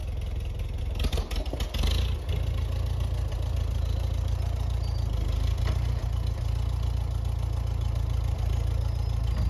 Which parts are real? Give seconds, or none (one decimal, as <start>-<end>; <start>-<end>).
0.0-9.5